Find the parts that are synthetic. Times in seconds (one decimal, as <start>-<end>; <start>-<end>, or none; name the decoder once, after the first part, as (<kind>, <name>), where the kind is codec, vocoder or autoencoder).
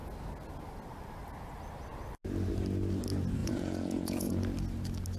3.4-4.3 (vocoder, Vocos)